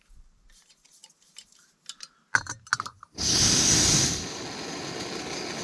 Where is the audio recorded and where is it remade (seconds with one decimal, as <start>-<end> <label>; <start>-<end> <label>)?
0.0-5.6 recorded